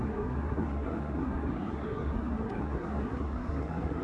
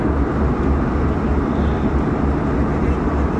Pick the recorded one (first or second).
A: second